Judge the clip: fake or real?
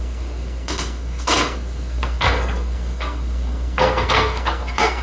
fake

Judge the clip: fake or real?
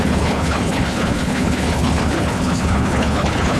fake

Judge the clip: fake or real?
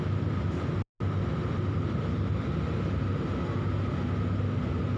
real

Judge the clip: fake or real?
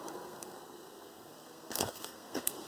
fake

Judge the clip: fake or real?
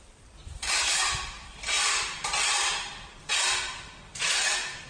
real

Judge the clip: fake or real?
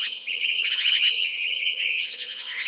fake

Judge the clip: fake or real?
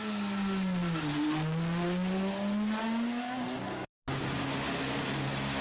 real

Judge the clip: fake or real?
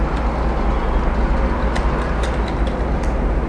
real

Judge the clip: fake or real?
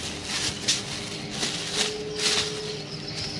real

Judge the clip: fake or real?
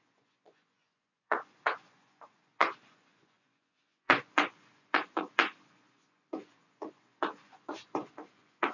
fake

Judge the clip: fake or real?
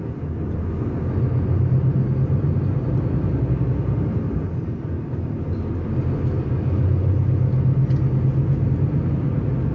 real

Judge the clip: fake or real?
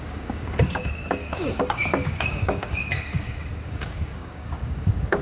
fake